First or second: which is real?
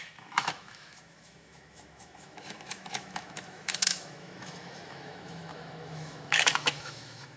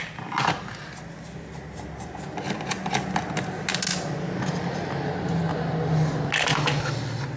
second